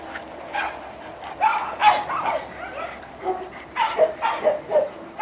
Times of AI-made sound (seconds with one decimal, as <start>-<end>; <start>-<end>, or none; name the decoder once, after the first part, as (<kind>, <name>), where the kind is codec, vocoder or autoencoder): 1.8-4.0 (vocoder, BigVGAN v2)